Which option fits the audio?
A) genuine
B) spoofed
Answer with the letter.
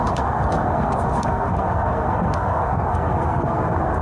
B